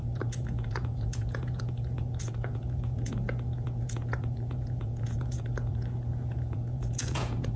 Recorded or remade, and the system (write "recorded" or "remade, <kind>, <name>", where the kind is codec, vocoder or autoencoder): remade, vocoder, Vocos